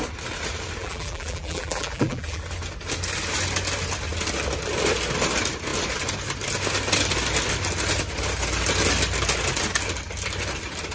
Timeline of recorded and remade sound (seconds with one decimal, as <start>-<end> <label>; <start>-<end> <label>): 0.0-0.8 recorded; 0.8-2.4 remade; 2.4-10.9 recorded